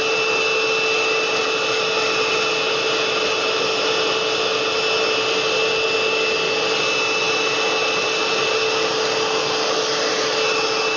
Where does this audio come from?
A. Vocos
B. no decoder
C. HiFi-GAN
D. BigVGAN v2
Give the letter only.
B